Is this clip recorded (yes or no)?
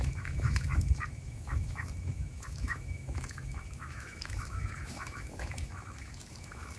no